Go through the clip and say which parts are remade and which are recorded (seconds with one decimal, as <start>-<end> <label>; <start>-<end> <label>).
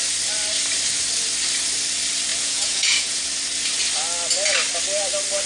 0.0-2.3 recorded; 2.3-3.2 remade; 3.2-5.5 recorded